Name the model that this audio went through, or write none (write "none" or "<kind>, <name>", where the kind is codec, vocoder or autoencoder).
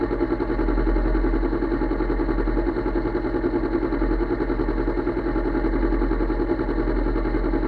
none